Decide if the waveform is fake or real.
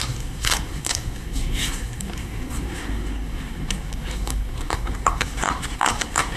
fake